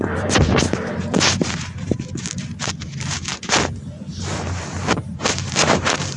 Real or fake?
fake